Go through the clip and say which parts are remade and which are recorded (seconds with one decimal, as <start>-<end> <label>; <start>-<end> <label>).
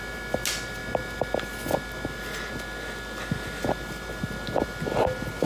0.0-5.5 recorded